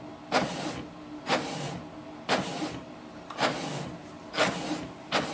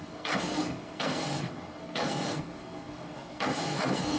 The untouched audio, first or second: first